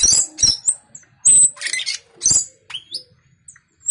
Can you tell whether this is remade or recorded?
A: recorded